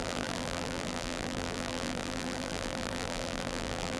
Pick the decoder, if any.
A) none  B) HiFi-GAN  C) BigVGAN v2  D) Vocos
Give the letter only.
C